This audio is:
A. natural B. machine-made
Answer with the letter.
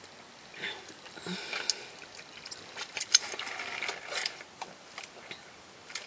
A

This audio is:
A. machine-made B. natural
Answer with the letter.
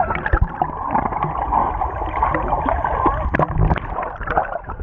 B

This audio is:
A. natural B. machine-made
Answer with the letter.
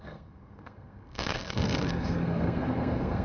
B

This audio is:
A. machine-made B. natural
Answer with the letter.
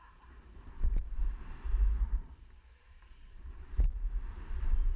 A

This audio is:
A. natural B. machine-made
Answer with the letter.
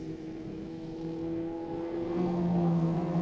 B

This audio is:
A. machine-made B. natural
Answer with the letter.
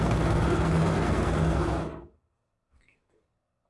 A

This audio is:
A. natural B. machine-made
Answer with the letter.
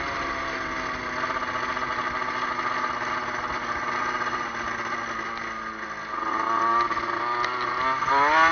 A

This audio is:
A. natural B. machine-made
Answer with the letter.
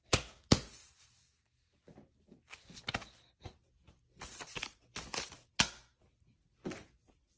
A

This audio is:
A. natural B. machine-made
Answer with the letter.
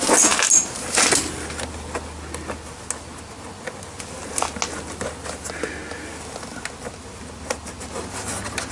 A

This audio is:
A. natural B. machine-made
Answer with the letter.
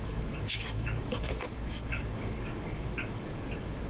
B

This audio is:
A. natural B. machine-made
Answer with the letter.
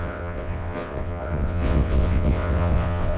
B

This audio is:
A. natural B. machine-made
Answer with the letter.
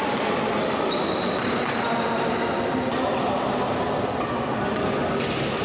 A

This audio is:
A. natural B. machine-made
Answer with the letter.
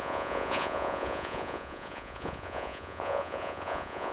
B